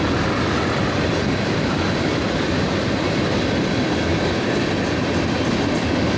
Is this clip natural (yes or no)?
yes